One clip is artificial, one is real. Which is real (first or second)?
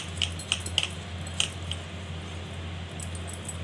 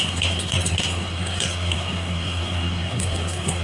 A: first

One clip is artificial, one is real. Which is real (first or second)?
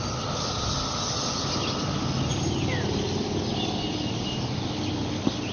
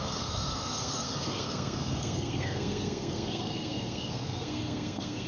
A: first